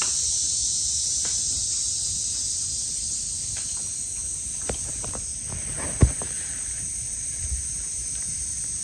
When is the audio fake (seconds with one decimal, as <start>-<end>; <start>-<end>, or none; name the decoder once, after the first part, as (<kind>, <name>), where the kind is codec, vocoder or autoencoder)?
0.0-1.7 (vocoder, BigVGAN v2); 4.2-5.3; 6.0-8.8